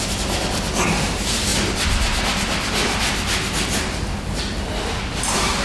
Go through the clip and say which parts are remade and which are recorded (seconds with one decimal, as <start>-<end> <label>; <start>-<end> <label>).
0.0-1.5 remade; 1.5-4.9 recorded; 4.9-5.6 remade